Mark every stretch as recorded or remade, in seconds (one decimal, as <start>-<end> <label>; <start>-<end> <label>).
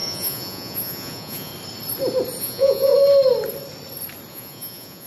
0.0-1.5 remade; 1.5-2.4 recorded; 2.4-2.9 remade; 2.9-4.3 recorded; 4.3-5.1 remade